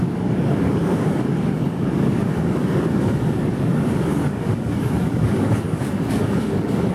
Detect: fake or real fake